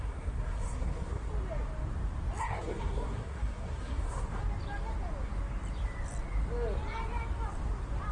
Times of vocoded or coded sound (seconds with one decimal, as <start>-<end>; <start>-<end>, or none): 0.0-1.3; 2.4-4.4

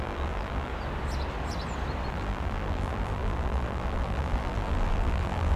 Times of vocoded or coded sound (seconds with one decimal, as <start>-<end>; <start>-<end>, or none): 0.0-0.7; 2.1-5.6

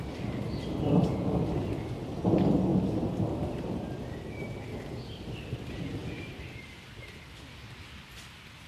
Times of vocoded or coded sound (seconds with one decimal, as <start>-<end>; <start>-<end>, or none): none

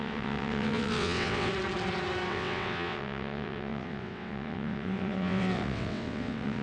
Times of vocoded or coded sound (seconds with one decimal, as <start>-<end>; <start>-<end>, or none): 0.0-1.5; 2.3-6.6

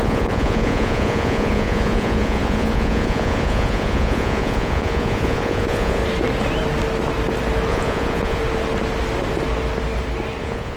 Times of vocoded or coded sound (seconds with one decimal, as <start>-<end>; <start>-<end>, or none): 0.0-6.0; 7.7-8.4; 10.4-10.8